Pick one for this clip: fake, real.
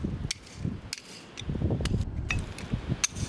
real